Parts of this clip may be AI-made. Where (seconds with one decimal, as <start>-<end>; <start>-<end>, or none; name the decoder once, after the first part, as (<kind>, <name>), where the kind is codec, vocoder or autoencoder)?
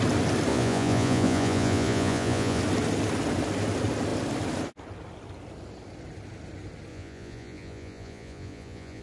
0.5-2.6 (vocoder, Vocos); 6.9-9.0